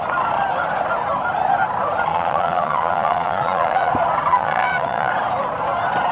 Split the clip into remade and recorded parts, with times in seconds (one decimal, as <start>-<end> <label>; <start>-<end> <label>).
0.0-2.1 recorded; 2.1-3.9 remade; 3.9-4.3 recorded; 4.3-5.1 remade; 5.1-6.1 recorded